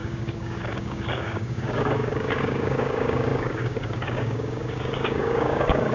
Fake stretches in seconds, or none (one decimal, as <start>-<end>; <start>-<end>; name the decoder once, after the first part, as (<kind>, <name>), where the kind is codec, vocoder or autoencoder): 0.0-5.9 (codec, DAC)